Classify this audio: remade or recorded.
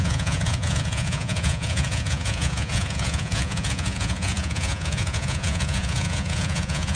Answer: remade